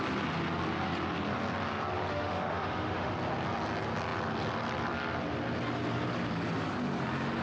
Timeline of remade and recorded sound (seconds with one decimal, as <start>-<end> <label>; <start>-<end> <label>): 0.0-2.1 recorded; 2.1-3.1 remade; 3.1-7.4 recorded